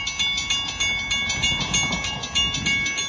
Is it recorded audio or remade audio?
recorded